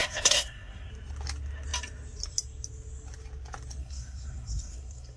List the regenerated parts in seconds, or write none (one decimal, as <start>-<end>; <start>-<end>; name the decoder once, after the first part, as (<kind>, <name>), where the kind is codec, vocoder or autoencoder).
0.0-0.9 (codec, SNAC); 3.8-5.2